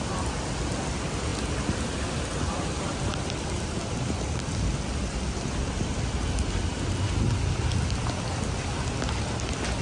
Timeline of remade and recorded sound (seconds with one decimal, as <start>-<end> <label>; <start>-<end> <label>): 0.0-9.8 recorded